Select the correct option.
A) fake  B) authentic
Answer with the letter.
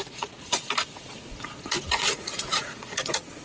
A